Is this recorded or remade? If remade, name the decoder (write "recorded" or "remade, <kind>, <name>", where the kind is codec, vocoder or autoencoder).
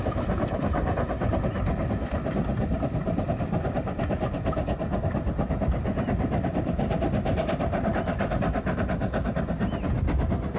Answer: recorded